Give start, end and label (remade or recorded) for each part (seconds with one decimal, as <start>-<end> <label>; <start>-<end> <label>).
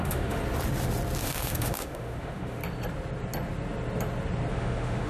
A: 0.0-0.4 remade; 0.4-1.2 recorded; 1.2-2.6 remade; 2.6-4.5 recorded; 4.5-5.1 remade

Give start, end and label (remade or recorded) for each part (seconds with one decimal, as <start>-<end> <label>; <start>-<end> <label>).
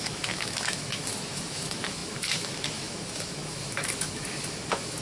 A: 0.0-5.0 remade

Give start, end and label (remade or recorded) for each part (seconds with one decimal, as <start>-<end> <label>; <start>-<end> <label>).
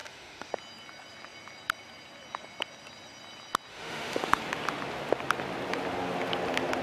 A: 0.0-0.5 remade; 0.5-3.7 recorded; 3.7-4.4 remade; 4.4-6.8 recorded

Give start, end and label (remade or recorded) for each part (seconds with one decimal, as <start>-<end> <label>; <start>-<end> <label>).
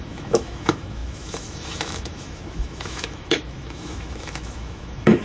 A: 0.0-5.2 remade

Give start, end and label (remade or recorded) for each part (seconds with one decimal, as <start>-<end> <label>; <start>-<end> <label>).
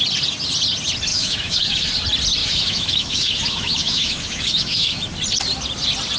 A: 0.0-1.1 recorded; 1.1-1.9 remade; 1.9-2.4 recorded; 2.4-5.1 remade; 5.1-6.2 recorded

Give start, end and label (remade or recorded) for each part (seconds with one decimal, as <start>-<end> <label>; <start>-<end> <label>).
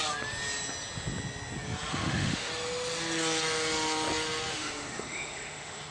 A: 0.0-1.9 recorded; 1.9-2.5 remade; 2.5-4.5 recorded; 4.5-5.9 remade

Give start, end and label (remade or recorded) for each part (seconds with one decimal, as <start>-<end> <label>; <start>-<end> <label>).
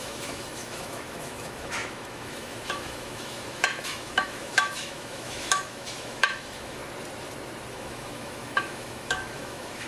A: 0.0-6.8 remade; 6.8-7.7 recorded; 7.7-9.9 remade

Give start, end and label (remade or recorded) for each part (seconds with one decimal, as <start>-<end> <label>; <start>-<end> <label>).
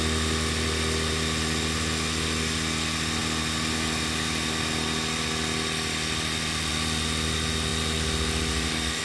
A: 0.0-9.0 recorded